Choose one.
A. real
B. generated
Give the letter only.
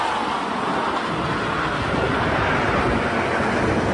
A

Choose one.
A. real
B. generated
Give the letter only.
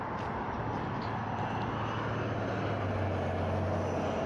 A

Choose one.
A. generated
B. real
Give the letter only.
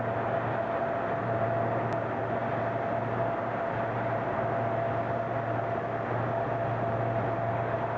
B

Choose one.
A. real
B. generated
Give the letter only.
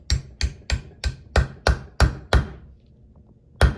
A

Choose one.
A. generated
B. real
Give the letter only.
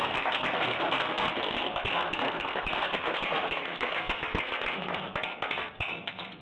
A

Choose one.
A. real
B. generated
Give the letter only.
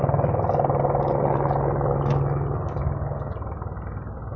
A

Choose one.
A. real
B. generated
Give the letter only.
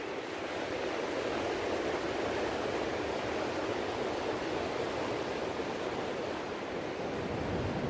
A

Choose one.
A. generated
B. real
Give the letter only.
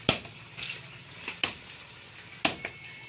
B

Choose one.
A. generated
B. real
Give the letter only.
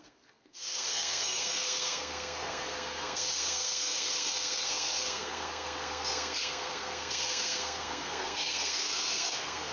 A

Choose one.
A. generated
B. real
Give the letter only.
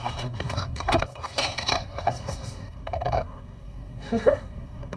A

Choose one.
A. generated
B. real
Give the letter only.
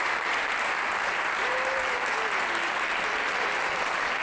B